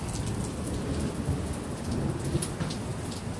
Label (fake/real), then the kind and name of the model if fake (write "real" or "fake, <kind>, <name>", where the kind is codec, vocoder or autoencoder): real